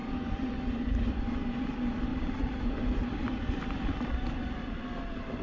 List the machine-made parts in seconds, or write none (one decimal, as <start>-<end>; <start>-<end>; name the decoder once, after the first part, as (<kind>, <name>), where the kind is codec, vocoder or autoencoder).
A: 2.1-2.6 (vocoder, BigVGAN v2)